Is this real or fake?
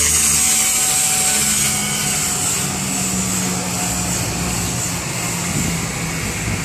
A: real